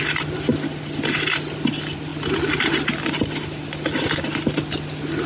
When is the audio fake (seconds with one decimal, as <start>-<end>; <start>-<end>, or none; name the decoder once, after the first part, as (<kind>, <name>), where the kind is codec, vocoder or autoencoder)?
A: none